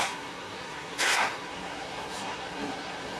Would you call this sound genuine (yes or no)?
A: no